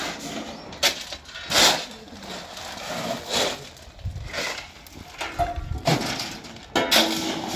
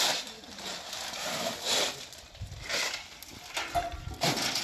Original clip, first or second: first